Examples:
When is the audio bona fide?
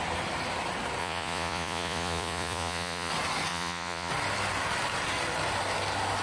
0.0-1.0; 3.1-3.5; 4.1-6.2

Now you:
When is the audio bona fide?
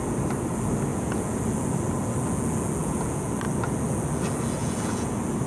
0.0-0.9; 1.4-2.8; 3.3-4.6; 5.1-5.5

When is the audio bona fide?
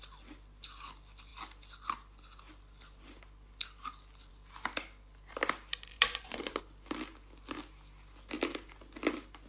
0.0-5.9; 6.6-9.5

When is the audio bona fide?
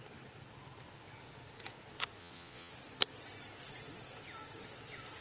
0.0-2.2; 2.7-5.2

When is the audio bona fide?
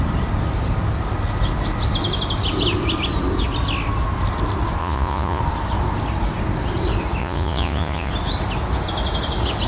0.0-4.8; 5.4-7.2; 8.1-9.7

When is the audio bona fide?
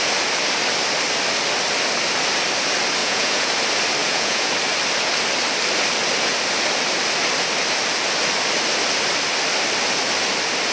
0.0-3.0; 3.5-4.0; 4.5-10.7